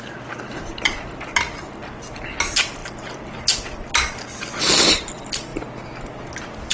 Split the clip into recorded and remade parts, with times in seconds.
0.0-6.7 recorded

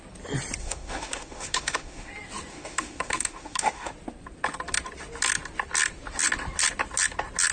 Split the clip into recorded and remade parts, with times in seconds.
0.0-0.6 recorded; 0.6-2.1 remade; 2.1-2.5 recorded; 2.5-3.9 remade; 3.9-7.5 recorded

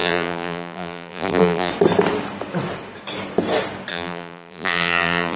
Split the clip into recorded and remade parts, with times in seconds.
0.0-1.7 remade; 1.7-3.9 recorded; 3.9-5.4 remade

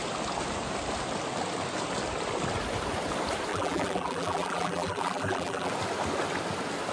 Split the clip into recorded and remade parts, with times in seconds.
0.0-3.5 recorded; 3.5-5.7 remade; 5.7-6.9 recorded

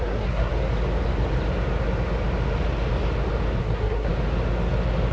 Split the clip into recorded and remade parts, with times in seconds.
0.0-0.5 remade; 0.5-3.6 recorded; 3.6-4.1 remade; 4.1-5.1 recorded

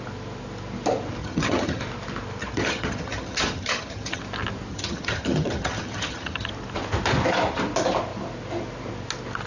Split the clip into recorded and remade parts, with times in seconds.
0.0-1.2 recorded; 1.2-1.8 remade; 1.8-2.4 recorded; 2.4-4.2 remade; 4.2-4.7 recorded; 4.7-6.5 remade; 6.5-9.5 recorded

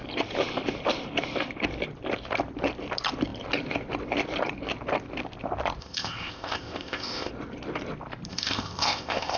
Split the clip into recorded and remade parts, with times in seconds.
0.0-5.8 recorded; 5.8-7.3 remade; 7.3-8.3 recorded; 8.3-9.4 remade